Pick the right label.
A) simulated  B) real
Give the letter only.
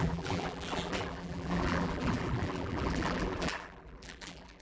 A